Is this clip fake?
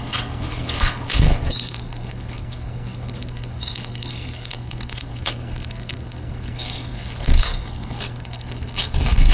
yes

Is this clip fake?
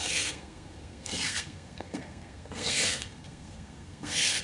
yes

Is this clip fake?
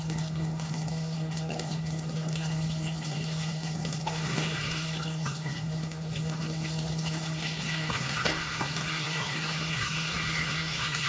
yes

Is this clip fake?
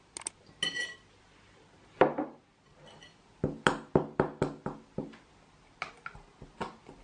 no